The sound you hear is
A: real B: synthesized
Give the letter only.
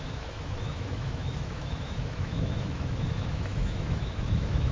B